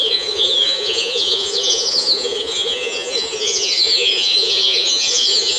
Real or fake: fake